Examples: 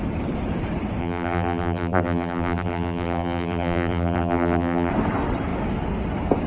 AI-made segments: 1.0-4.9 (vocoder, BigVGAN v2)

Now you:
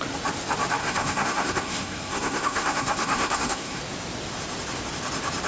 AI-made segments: 0.8-3.8 (codec, SNAC)

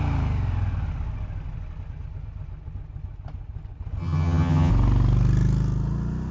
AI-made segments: 4.0-4.7 (vocoder, HiFi-GAN)

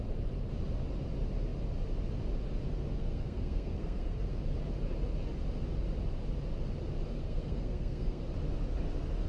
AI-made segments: 3.0-4.3 (codec, SNAC); 7.1-8.2

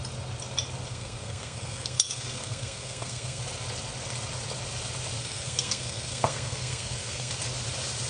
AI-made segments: 0.9-3.4 (codec, SNAC); 5.2-7.3